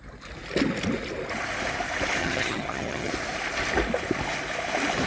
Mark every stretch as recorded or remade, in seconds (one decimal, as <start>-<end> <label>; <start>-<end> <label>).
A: 0.0-2.2 recorded; 2.2-3.1 remade; 3.1-5.1 recorded